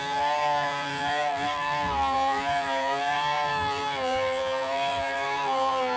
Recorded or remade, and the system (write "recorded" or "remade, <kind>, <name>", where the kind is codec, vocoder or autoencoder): remade, vocoder, BigVGAN v2